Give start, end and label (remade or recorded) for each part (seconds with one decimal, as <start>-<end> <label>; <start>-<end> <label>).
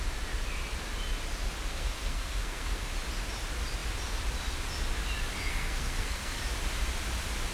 0.0-1.7 recorded; 1.7-2.9 remade; 2.9-5.5 recorded; 5.5-6.4 remade; 6.4-7.5 recorded